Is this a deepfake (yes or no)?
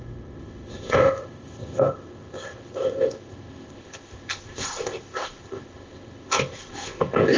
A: yes